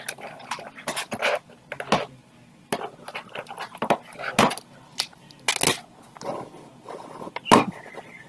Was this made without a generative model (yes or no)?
yes